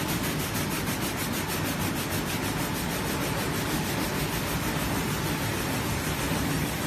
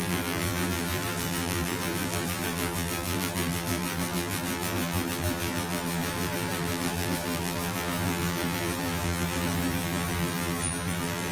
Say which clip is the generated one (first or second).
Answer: second